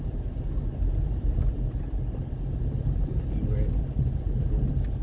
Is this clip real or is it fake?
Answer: real